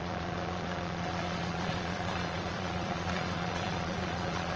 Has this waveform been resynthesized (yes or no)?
yes